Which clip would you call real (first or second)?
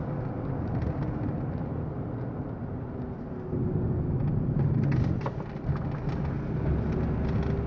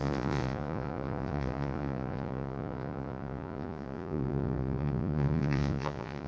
first